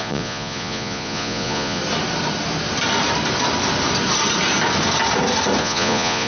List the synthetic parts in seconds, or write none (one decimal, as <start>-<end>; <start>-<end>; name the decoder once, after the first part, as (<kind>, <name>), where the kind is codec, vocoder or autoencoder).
0.0-1.8 (vocoder, Vocos); 5.6-6.3